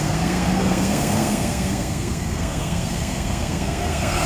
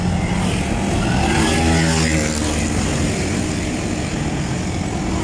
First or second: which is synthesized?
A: first